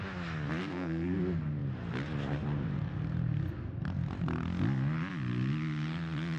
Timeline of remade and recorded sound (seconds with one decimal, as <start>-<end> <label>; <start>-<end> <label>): 0.0-0.6 recorded; 0.6-1.2 remade; 1.2-6.4 recorded